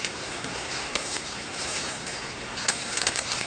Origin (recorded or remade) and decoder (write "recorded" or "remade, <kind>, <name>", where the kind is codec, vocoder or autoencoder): remade, codec, SNAC